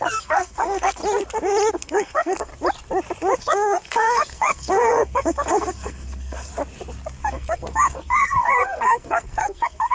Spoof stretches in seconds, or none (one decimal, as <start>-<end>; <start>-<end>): 0.0-1.0; 1.7-2.5; 3.4-6.5; 7.2-9.9